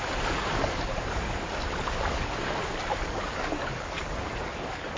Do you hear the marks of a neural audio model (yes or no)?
yes